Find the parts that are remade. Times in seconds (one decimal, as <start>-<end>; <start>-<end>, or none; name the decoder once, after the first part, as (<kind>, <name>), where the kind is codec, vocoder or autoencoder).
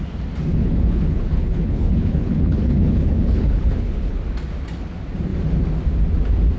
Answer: 0.5-4.2 (codec, HILCodec)